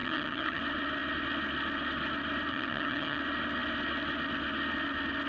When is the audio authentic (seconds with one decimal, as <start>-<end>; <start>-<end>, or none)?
0.6-2.5; 3.2-5.3